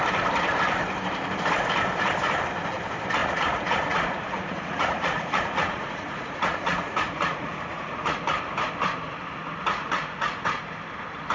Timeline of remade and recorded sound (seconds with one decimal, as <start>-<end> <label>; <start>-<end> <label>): 0.0-3.2 recorded; 3.2-8.2 remade; 8.2-9.7 recorded; 9.7-10.4 remade; 10.4-11.3 recorded